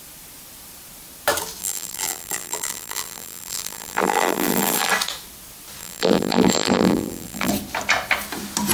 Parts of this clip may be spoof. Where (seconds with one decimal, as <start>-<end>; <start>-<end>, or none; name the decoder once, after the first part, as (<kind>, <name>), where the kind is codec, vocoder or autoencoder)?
1.6-4.9 (vocoder, BigVGAN v2); 5.8-7.5